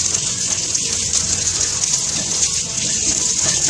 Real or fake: fake